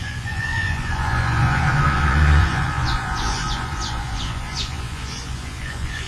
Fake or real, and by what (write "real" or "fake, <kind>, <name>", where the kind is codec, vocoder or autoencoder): fake, vocoder, Vocos